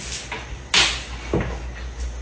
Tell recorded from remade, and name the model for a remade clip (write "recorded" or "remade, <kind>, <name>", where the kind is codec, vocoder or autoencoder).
recorded